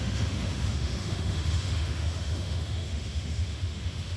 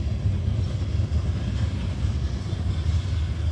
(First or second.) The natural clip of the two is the second